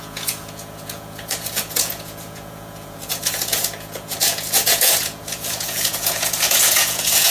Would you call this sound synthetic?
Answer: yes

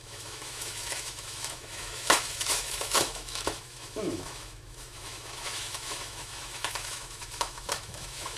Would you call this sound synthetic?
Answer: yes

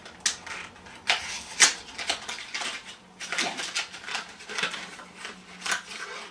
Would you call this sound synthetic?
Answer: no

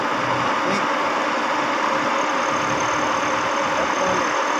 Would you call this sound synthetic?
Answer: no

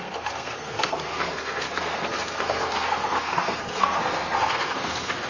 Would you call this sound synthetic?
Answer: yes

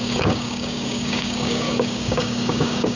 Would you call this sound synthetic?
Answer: yes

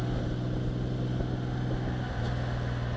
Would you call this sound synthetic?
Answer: no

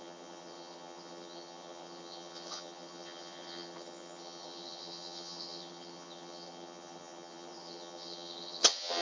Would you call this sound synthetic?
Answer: yes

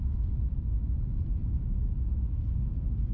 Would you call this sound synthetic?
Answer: no